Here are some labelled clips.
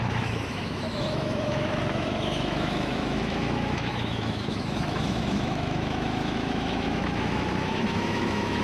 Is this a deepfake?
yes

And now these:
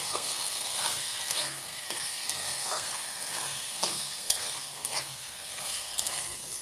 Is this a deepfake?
yes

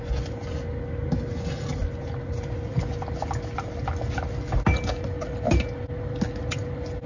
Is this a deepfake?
no